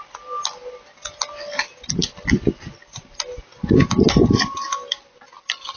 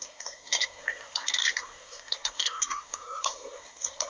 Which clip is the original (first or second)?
first